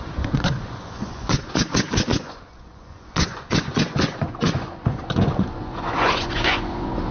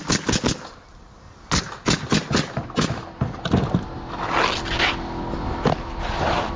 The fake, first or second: first